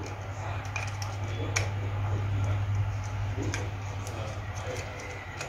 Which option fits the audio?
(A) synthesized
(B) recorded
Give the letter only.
B